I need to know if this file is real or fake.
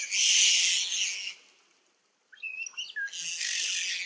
real